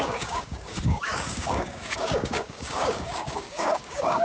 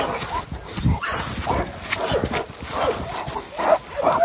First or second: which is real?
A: second